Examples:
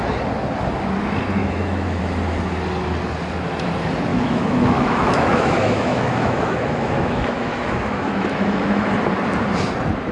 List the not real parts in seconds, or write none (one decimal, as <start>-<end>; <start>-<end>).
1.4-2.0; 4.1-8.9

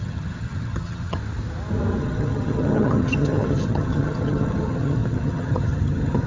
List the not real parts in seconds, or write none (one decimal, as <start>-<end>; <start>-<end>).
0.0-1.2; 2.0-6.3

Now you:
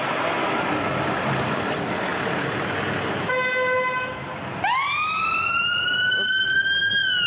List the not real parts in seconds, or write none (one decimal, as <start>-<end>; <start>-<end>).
none

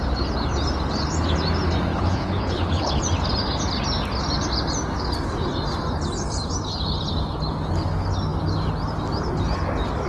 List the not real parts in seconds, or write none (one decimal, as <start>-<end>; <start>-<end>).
1.9-3.0

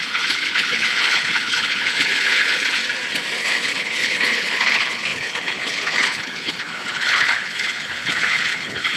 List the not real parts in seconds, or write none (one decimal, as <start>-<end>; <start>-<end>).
0.0-2.8; 3.4-9.0

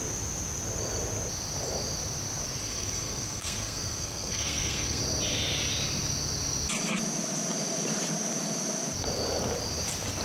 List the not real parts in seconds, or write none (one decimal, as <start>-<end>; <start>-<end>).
2.7-5.0

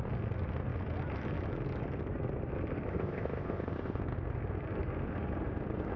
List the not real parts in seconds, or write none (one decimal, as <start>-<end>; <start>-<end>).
2.9-4.0

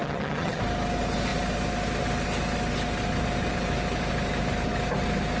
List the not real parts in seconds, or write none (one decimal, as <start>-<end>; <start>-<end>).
0.0-0.6